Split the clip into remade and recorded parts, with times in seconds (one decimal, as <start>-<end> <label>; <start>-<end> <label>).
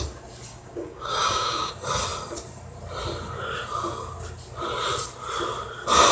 0.0-0.5 recorded; 0.5-1.7 remade; 1.7-6.1 recorded